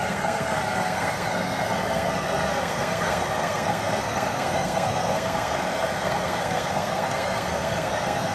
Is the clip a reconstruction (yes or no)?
yes